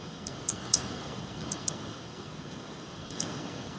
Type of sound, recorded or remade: remade